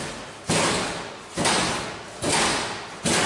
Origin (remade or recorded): recorded